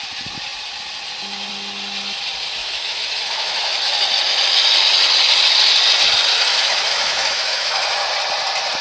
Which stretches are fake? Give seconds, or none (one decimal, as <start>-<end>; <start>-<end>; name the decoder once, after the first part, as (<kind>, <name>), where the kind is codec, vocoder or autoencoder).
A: 2.6-3.6 (autoencoder, DAC-VAE); 6.5-7.8